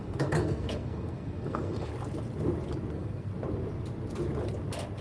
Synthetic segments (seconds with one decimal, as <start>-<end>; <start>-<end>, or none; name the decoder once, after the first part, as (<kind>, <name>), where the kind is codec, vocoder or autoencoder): 0.0-1.9 (codec, SNAC); 2.9-3.3